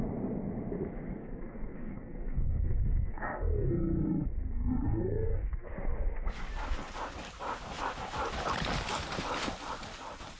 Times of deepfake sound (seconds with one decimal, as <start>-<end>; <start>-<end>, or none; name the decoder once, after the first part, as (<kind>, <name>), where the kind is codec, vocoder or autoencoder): 1.2-5.7 (codec, SNAC)